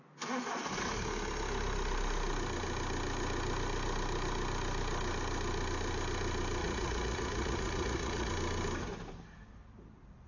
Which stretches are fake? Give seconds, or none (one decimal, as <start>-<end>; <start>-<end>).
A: 6.6-8.3

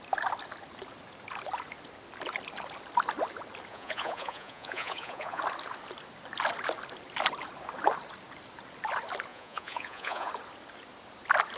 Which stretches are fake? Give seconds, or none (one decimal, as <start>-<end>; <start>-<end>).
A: 3.7-5.4; 9.3-10.3